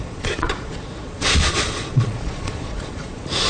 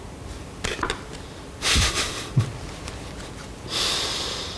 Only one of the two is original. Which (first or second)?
second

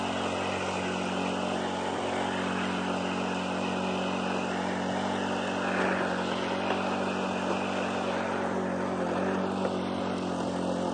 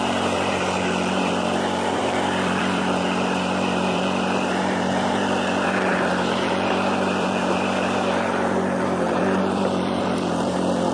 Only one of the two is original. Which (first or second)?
first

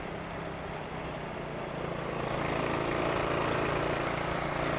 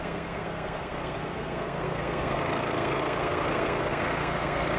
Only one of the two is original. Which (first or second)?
first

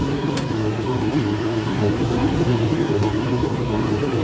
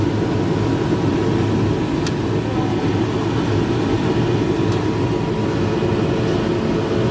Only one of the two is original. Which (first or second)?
second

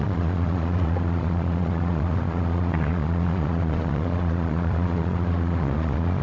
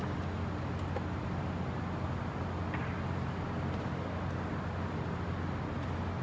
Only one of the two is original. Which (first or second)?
second